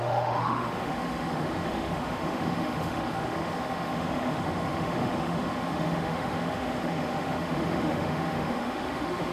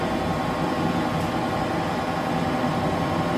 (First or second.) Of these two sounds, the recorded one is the second